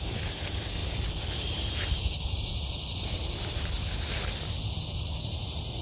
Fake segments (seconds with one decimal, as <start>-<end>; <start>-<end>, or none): 0.8-1.7